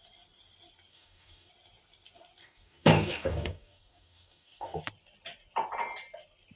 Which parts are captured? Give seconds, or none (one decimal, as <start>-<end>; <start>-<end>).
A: 0.0-0.9; 1.5-2.4; 4.8-6.6